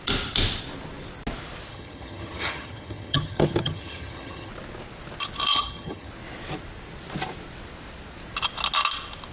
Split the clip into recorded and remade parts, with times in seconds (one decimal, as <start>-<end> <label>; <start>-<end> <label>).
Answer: 0.0-1.7 recorded; 1.7-4.5 remade; 4.5-5.5 recorded; 5.5-6.1 remade; 6.1-9.3 recorded